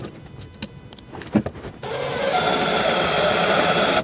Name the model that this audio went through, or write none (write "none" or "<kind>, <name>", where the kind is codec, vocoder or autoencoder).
none